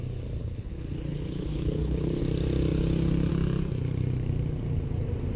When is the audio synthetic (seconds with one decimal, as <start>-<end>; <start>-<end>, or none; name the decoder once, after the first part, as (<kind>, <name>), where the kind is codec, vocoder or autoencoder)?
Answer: 0.4-2.2 (codec, HILCodec)